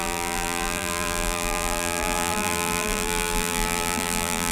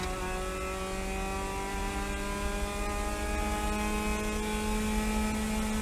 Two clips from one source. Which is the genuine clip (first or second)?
second